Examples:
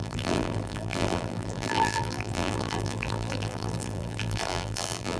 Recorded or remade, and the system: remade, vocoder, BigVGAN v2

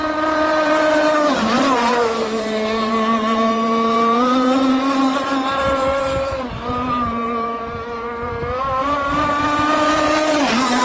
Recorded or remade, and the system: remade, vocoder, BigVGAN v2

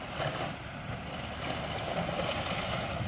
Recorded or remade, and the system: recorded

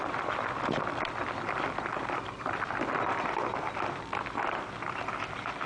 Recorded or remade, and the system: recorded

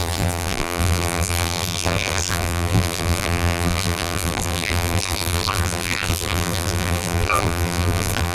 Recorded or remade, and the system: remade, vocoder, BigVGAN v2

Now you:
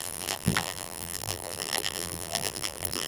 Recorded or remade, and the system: remade, vocoder, BigVGAN v2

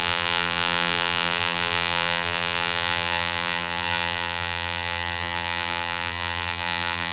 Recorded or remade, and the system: remade, vocoder, BigVGAN v2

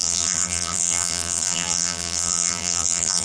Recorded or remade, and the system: remade, vocoder, BigVGAN v2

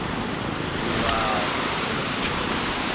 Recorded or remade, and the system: remade, vocoder, BigVGAN v2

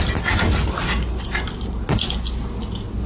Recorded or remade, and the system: recorded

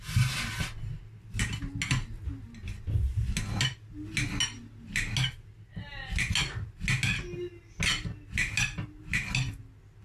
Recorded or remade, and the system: recorded